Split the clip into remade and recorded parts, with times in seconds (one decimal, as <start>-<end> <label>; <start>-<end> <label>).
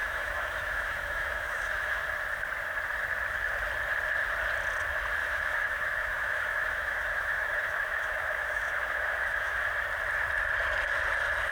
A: 0.0-2.0 remade; 2.0-5.2 recorded; 5.2-9.6 remade; 9.6-11.5 recorded